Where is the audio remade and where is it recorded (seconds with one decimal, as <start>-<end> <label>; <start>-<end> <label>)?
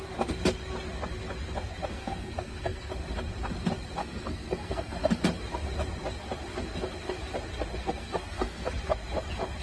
0.0-1.9 recorded; 1.9-2.9 remade; 2.9-4.0 recorded; 4.0-5.2 remade; 5.2-7.8 recorded; 7.8-8.7 remade; 8.7-9.6 recorded